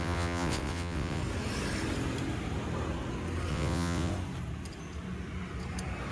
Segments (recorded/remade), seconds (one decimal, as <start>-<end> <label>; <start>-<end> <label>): 0.0-1.2 remade; 1.2-3.5 recorded; 3.5-4.1 remade; 4.1-6.1 recorded